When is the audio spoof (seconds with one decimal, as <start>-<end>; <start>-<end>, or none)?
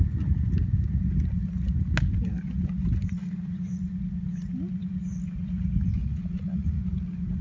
6.0-6.8